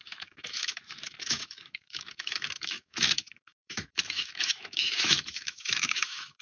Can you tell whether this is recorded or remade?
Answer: remade